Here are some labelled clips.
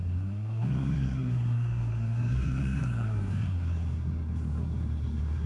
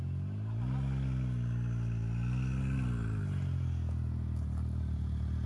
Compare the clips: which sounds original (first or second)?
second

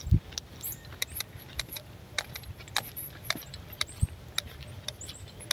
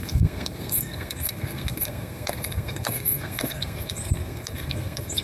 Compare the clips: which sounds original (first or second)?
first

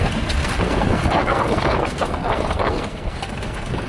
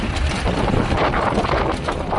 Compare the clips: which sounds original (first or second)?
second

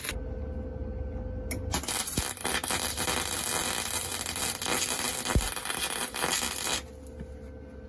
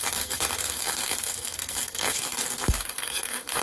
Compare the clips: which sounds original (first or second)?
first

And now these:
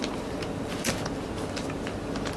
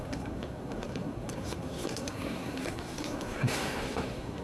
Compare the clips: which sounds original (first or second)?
first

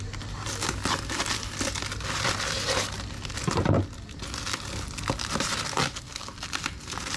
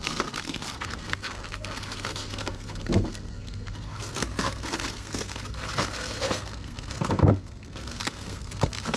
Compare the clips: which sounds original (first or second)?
first